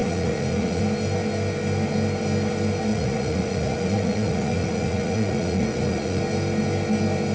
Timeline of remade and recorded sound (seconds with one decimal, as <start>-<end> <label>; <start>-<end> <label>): 0.0-0.8 remade; 0.8-2.9 recorded; 2.9-6.2 remade; 6.2-7.3 recorded